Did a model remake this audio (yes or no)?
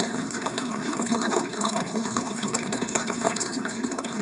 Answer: yes